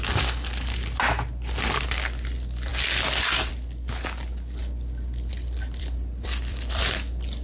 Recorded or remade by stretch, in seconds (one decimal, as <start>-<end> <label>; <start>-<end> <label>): 0.0-5.3 recorded; 5.3-6.8 remade; 6.8-7.4 recorded

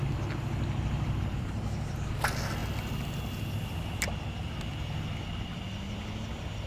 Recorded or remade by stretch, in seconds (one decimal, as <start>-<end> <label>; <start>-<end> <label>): 0.0-1.3 recorded; 1.3-2.2 remade; 2.2-6.7 recorded

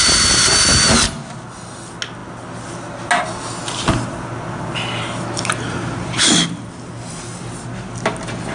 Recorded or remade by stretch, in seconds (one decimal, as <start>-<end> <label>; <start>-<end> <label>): 0.0-8.5 recorded

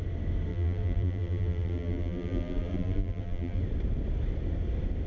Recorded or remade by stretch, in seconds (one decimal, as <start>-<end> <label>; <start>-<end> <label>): 0.0-0.5 recorded; 0.5-3.6 remade; 3.6-5.1 recorded